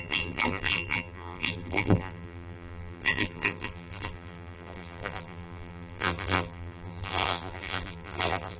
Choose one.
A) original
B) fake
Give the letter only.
B